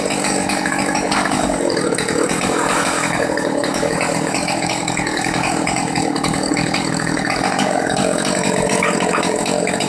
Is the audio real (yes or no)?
no